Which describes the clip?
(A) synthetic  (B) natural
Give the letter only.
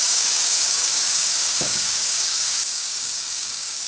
A